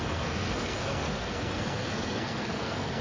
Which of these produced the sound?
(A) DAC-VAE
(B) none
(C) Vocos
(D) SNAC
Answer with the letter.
D